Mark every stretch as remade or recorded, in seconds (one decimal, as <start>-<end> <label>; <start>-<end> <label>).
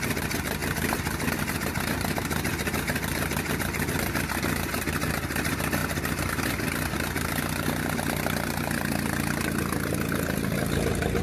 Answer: 0.0-0.6 recorded; 0.6-3.9 remade; 3.9-11.2 recorded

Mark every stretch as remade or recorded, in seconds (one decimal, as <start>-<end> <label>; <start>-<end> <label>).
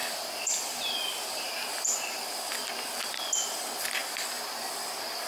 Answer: 0.0-2.7 remade; 2.7-4.0 recorded; 4.0-4.6 remade; 4.6-5.3 recorded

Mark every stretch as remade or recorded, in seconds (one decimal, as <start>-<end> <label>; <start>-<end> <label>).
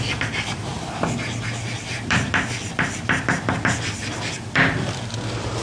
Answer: 0.0-0.7 recorded; 0.7-4.1 remade; 4.1-5.6 recorded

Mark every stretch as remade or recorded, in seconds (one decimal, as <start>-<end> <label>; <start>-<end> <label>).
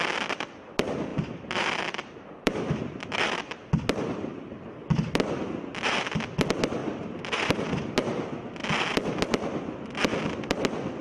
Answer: 0.0-1.1 recorded; 1.1-3.4 remade; 3.4-6.8 recorded; 6.8-7.9 remade; 7.9-11.0 recorded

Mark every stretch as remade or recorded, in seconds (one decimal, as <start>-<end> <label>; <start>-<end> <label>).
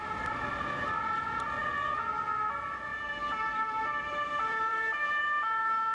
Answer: 0.0-2.9 recorded; 2.9-5.2 remade; 5.2-5.9 recorded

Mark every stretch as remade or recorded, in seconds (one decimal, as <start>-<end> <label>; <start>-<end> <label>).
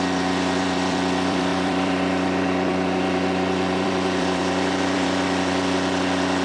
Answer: 0.0-6.4 remade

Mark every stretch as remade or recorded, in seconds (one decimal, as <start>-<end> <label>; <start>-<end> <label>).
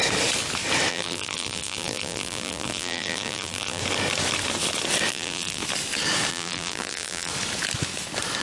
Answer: 0.0-0.9 recorded; 0.9-3.8 remade; 3.8-5.1 recorded; 5.1-5.6 remade; 5.6-6.3 recorded; 6.3-7.3 remade; 7.3-8.4 recorded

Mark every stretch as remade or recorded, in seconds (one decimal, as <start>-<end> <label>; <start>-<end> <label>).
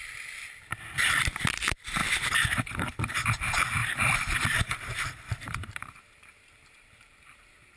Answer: 0.0-2.0 recorded; 2.0-3.1 remade; 3.1-3.8 recorded; 3.8-7.8 remade